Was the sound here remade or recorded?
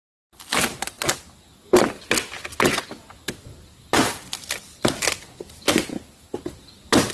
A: recorded